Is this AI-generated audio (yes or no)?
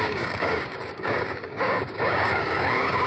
yes